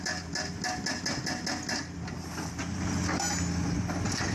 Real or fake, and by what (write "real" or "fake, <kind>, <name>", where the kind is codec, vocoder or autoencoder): real